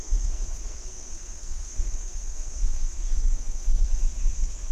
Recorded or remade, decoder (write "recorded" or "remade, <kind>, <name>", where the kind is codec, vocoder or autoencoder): remade, codec, SNAC